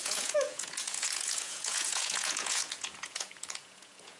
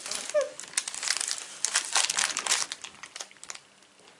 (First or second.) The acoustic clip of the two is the second